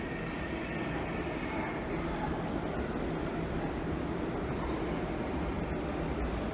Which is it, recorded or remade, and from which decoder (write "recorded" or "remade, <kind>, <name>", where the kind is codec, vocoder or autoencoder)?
recorded